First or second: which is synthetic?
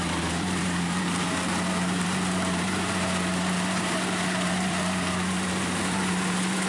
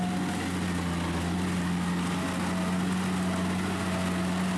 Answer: first